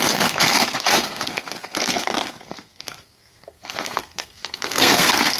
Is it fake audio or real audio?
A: fake